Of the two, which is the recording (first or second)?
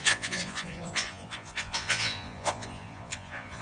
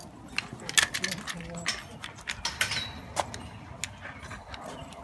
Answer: second